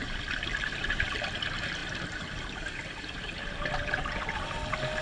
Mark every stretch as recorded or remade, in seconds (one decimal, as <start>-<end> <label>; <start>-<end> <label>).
0.0-5.0 recorded